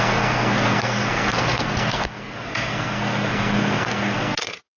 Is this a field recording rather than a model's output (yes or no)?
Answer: no